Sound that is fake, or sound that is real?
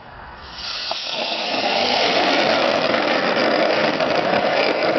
fake